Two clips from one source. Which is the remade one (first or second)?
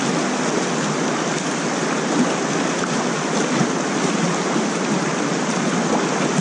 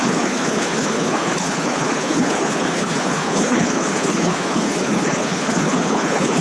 second